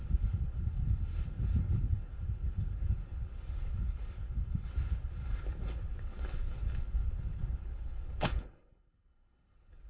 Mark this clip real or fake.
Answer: fake